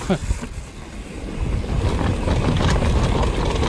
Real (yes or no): yes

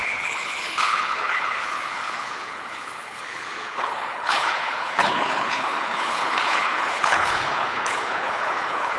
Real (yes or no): no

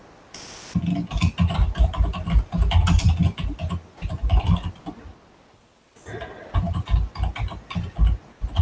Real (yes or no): yes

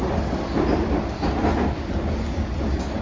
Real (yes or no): yes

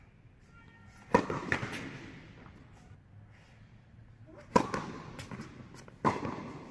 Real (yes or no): yes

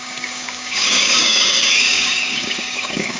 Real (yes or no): no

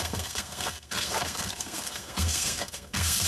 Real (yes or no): no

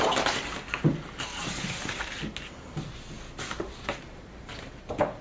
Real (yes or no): yes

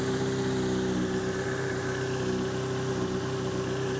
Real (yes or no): yes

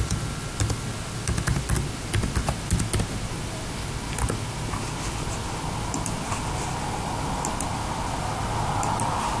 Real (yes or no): yes